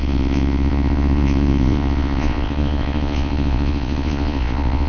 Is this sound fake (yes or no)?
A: yes